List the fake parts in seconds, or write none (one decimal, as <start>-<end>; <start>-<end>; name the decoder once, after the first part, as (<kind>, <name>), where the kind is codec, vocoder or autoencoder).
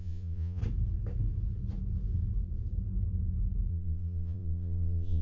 0.0-0.6 (vocoder, Vocos); 3.7-5.2